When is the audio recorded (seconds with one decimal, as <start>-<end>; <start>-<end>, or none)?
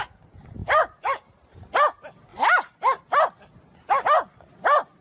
0.0-0.6; 1.7-5.0